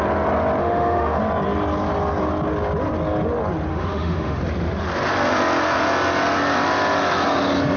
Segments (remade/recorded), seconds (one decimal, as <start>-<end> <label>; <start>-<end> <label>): 0.0-0.6 recorded; 0.6-1.2 remade; 1.2-3.7 recorded; 3.7-4.4 remade; 4.4-7.8 recorded